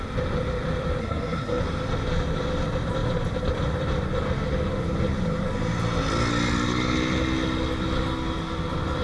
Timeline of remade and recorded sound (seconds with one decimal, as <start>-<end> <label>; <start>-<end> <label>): 0.0-1.0 recorded; 1.0-1.6 remade; 1.6-9.0 recorded